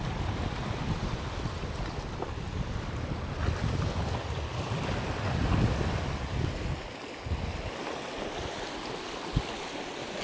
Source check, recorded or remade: recorded